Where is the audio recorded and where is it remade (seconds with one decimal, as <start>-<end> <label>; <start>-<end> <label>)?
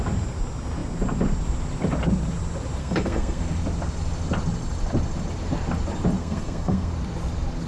0.0-2.8 recorded; 2.8-3.4 remade; 3.4-6.2 recorded; 6.2-6.9 remade; 6.9-7.7 recorded